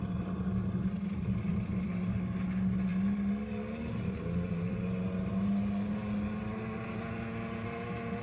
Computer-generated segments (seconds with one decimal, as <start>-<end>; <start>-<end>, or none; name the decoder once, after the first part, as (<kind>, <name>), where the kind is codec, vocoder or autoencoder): none